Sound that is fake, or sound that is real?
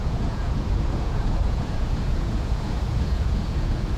fake